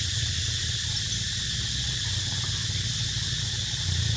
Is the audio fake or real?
real